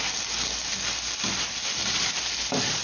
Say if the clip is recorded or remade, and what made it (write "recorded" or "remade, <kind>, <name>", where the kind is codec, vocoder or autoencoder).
recorded